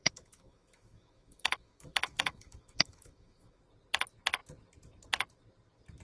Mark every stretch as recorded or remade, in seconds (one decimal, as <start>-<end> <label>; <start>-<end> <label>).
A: 0.0-3.6 remade; 3.6-6.0 recorded